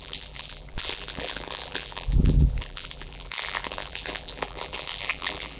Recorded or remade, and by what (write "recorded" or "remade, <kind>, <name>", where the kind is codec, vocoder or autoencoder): remade, vocoder, BigVGAN v2